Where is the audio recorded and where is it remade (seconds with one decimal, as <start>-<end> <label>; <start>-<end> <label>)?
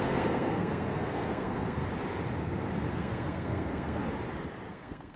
0.0-1.8 remade; 1.8-2.9 recorded; 2.9-4.0 remade; 4.0-4.7 recorded; 4.7-5.2 remade